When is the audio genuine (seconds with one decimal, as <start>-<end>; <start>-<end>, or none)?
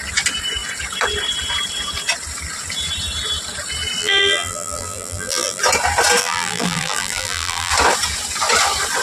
0.0-4.0; 5.6-6.2; 7.7-9.0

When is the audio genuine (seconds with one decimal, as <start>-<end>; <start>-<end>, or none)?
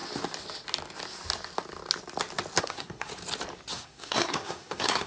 0.0-2.6; 3.1-3.7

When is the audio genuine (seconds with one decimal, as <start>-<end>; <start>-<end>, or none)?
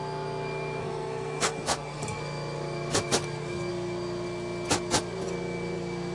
0.0-0.8; 2.2-6.1